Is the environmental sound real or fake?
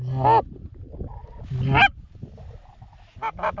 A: real